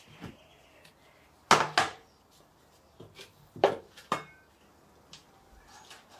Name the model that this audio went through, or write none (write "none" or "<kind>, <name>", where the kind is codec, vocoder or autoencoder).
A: none